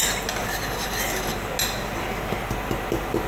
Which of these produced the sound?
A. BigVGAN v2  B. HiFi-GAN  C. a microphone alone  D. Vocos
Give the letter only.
C